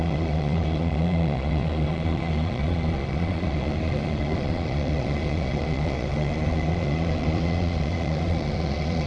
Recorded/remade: remade